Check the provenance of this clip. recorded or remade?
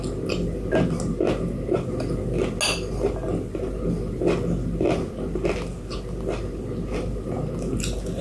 recorded